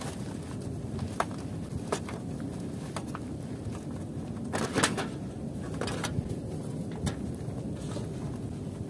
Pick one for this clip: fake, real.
real